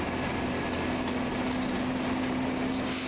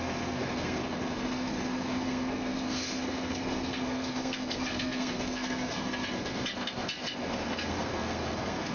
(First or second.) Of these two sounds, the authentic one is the first